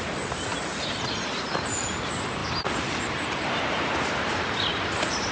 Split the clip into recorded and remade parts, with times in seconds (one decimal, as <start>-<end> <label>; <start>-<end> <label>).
0.0-2.4 remade; 2.4-3.0 recorded; 3.0-5.3 remade